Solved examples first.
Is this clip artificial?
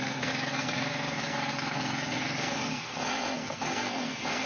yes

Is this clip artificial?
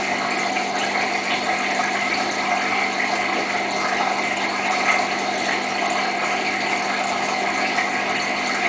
no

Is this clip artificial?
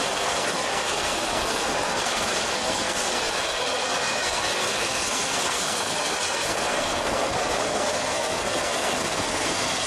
yes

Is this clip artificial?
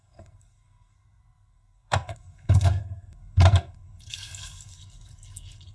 yes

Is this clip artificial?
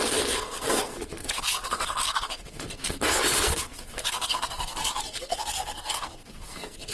yes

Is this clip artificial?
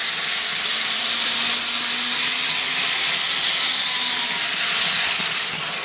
no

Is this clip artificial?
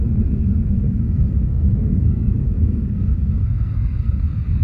yes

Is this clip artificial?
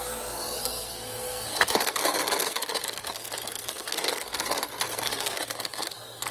yes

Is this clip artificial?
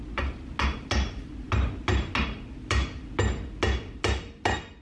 no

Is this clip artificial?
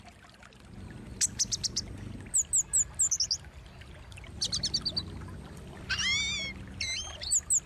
no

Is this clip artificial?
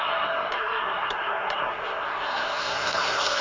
yes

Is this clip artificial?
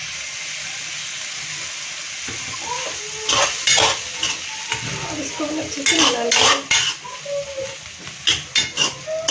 no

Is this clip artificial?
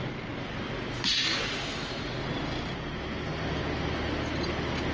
no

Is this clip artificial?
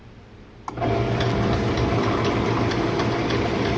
no